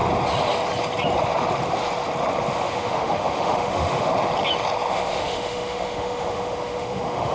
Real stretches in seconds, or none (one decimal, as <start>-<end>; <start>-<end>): 0.0-2.5; 4.1-4.9